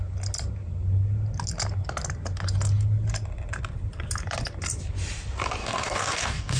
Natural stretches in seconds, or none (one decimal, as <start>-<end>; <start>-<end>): 0.0-5.6